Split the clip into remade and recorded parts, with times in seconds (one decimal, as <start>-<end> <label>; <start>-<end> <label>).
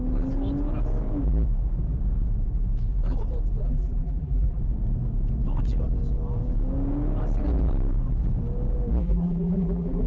0.0-3.6 recorded; 3.6-4.6 remade; 4.6-9.0 recorded; 9.0-10.1 remade